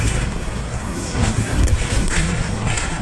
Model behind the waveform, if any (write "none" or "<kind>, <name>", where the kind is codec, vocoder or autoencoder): codec, SNAC